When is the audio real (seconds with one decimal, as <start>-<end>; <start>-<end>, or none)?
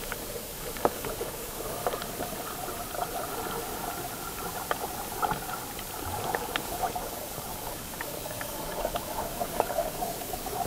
1.8-6.0